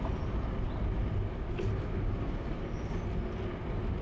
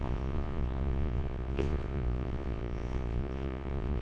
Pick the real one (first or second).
first